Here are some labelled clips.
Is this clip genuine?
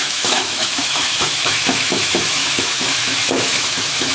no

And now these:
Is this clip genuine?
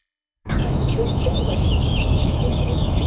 no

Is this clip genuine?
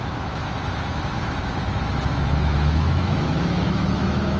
no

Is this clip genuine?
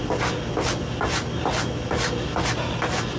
yes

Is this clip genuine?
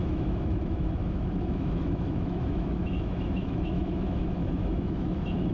no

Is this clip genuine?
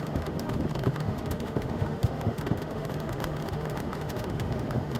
no